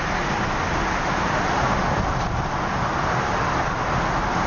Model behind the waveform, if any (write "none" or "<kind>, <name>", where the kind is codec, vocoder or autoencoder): none